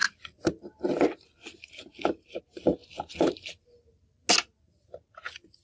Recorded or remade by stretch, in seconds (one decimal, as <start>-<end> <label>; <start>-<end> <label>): 0.0-5.6 recorded